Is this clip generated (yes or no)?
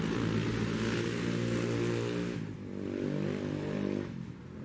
no